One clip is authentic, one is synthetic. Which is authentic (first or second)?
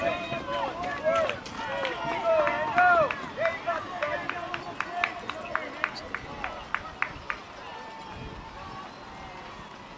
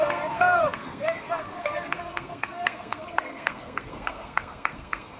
first